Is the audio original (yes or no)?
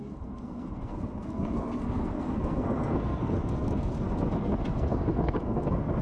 no